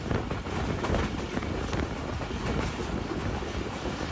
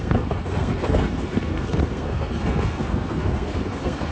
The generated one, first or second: second